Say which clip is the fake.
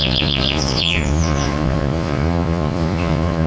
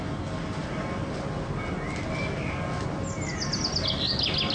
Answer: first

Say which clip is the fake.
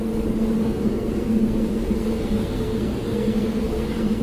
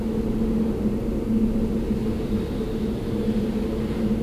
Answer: first